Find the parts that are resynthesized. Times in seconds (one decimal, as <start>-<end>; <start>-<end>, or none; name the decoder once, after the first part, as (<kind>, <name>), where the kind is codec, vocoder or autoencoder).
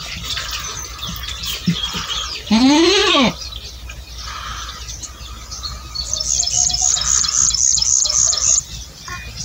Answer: 1.6-2.5 (vocoder, BigVGAN v2)